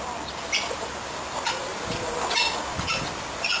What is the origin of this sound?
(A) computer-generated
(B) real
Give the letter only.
B